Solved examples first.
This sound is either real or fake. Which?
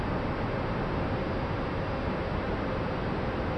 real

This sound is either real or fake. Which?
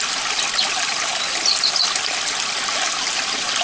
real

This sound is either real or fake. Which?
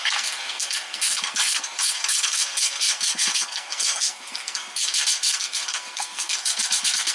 fake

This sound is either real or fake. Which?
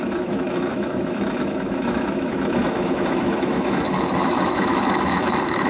fake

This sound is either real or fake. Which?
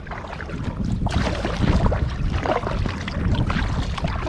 real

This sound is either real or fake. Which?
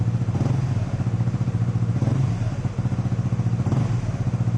real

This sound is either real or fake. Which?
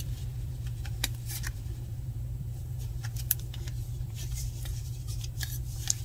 fake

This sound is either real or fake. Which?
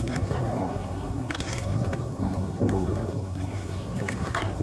fake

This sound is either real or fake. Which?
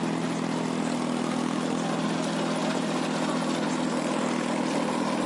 real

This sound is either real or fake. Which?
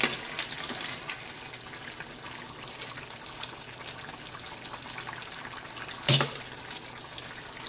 real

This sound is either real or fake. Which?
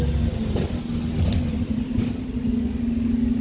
real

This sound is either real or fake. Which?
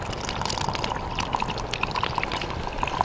real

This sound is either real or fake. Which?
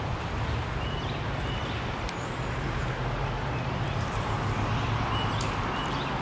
real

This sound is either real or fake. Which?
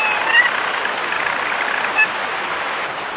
real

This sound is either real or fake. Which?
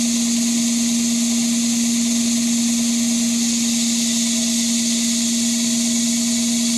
real